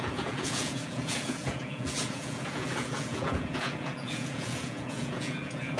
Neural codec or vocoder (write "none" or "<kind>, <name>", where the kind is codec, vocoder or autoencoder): vocoder, Vocos